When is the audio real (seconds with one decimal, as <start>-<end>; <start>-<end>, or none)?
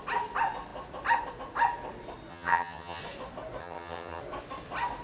0.0-2.3; 3.0-3.6; 4.2-5.0